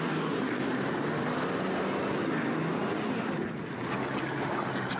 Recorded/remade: recorded